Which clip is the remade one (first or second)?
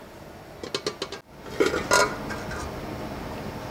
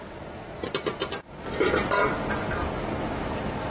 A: second